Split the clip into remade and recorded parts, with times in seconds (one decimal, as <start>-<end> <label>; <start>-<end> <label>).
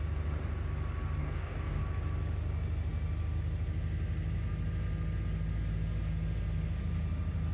0.0-1.2 recorded; 1.2-1.8 remade; 1.8-7.5 recorded